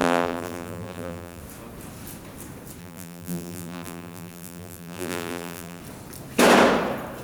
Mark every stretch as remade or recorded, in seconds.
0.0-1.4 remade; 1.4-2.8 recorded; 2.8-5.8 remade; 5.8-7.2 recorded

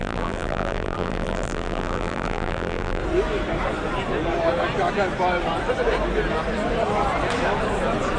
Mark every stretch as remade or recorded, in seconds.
0.0-3.0 remade; 3.0-8.2 recorded